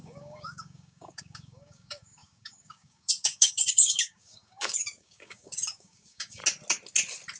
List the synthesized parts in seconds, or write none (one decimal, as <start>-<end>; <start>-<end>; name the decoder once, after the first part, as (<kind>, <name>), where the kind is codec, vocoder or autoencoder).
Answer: 0.0-6.4 (codec, DAC)